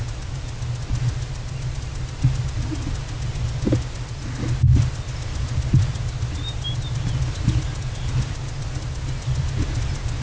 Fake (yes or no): no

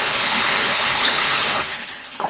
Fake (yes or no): yes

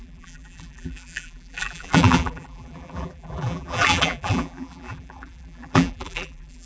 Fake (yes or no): yes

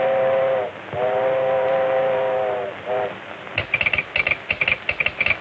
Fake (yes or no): no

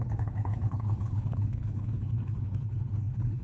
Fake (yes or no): yes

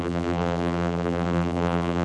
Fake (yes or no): yes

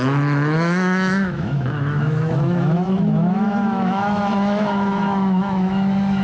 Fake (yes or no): yes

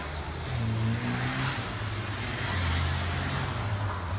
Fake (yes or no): no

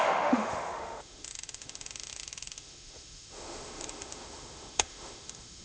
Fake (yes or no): yes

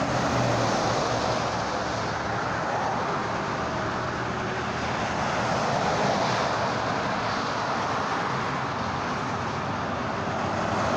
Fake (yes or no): no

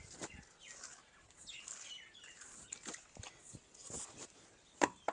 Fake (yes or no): no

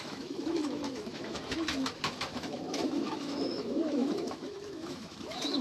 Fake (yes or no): yes